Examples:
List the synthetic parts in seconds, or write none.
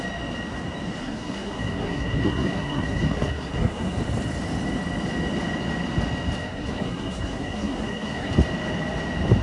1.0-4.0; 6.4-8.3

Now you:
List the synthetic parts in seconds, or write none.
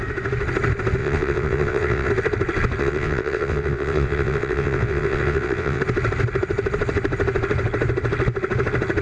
1.0-2.1; 2.8-5.8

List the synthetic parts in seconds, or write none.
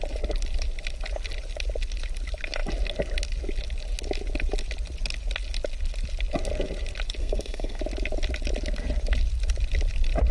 7.2-7.8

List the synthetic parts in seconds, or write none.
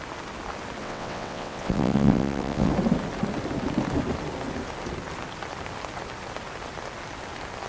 0.8-2.7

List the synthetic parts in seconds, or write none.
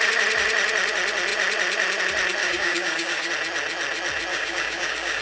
2.4-3.3; 4.3-5.2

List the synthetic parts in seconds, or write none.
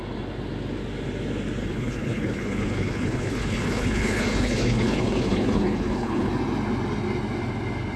1.6-6.3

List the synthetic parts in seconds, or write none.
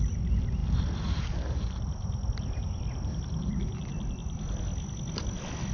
none